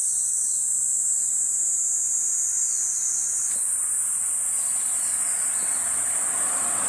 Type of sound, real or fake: real